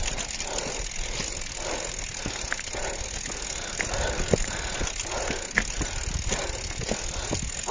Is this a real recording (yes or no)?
yes